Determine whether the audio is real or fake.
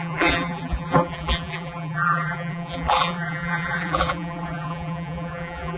fake